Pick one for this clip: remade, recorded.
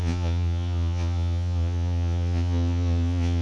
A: remade